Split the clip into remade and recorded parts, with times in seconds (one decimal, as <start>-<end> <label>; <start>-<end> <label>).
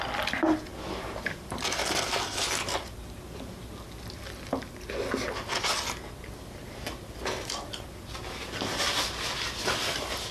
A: 0.0-0.7 recorded; 0.7-2.2 remade; 2.2-10.3 recorded